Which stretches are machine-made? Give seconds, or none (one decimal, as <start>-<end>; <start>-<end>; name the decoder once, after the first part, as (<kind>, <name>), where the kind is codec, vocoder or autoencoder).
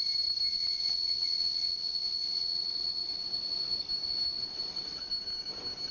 0.5-3.8 (vocoder, WaveNeXt); 4.3-5.1